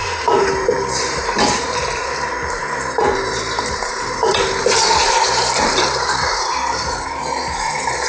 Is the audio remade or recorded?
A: remade